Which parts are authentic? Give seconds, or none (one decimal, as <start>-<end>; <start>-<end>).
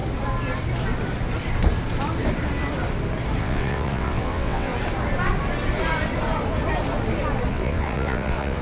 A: 0.0-3.4; 4.7-7.5